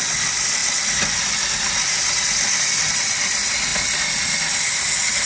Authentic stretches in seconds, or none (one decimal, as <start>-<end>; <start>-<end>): 0.0-5.3

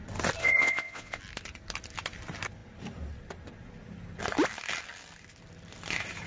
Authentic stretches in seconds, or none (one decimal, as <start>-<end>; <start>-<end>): 0.0-0.4; 1.2-6.3

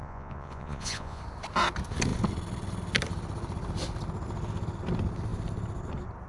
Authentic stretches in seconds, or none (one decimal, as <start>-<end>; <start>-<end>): 1.2-6.3

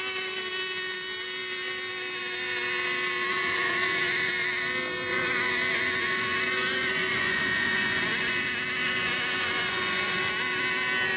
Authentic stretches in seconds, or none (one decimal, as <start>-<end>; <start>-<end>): 0.0-3.3; 4.3-5.1; 8.4-8.8; 10.3-11.2

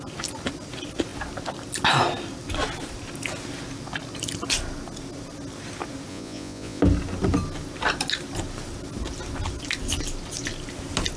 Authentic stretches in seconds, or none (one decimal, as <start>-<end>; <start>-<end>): 0.0-6.1; 6.8-11.2

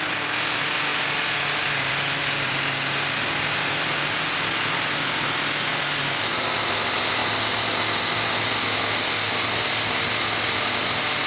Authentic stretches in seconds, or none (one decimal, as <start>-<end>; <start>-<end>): 0.0-11.3

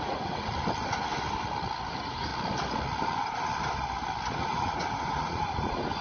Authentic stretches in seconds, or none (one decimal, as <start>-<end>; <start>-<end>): 0.5-1.9; 2.3-4.3